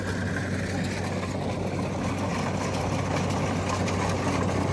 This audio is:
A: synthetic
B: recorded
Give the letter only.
B